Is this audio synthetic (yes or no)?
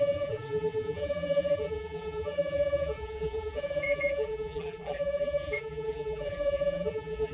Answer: yes